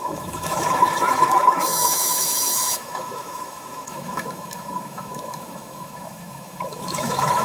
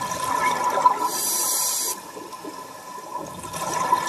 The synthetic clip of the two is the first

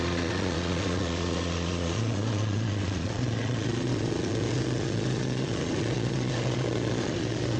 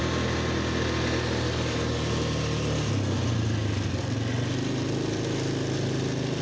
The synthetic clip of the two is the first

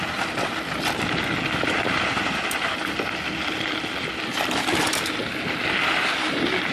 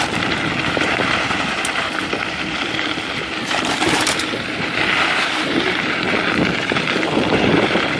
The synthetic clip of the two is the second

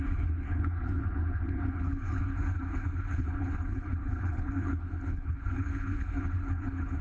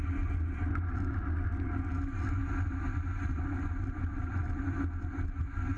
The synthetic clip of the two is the first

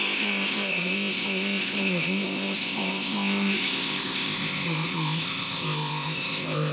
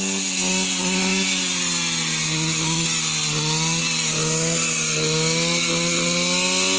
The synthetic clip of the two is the first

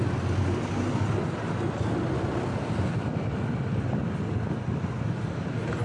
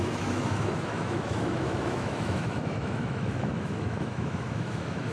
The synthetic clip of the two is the second